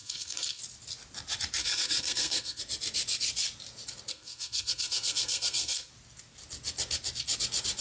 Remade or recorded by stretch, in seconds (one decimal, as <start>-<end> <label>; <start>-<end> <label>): 0.0-0.6 remade; 0.6-1.6 recorded; 1.6-2.6 remade; 2.6-4.1 recorded; 4.1-5.9 remade; 5.9-7.8 recorded